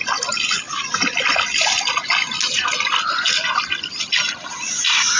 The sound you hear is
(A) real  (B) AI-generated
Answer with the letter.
A